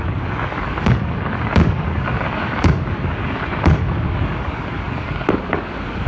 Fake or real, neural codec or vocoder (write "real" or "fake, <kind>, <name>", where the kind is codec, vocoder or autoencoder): fake, codec, DAC